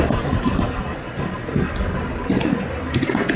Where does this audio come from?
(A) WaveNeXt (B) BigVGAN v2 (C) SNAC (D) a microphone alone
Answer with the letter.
D